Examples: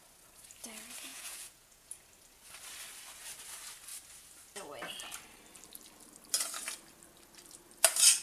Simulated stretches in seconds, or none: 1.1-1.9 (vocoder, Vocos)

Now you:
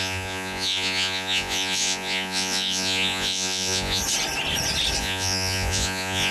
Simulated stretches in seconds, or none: 0.0-4.0 (vocoder, Vocos); 5.0-6.3

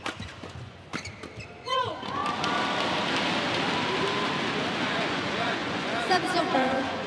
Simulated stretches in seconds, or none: 0.0-0.9 (vocoder, Vocos); 1.6-2.2; 4.8-7.1

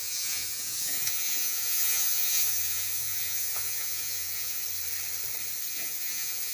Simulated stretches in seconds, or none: 0.0-4.6 (vocoder, Vocos); 5.7-6.5

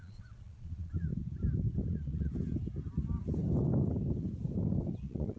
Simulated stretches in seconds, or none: 0.0-1.1 (vocoder, Vocos); 1.9-2.3; 5.0-5.4

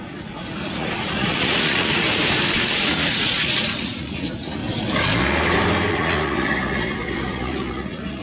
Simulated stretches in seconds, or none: 0.0-2.2 (vocoder, Vocos); 2.8-4.6; 5.9-8.2

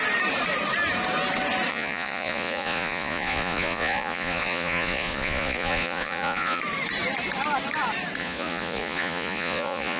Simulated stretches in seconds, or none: 1.7-6.6 (vocoder, Vocos); 8.2-10.0

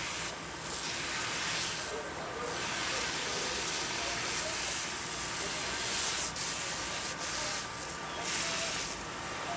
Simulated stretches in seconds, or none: 5.6-6.1 (vocoder, Vocos)